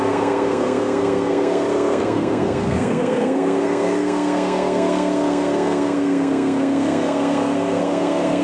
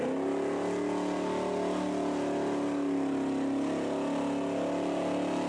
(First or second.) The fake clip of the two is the first